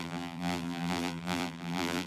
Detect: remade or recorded remade